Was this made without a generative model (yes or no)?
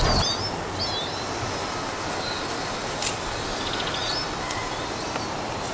yes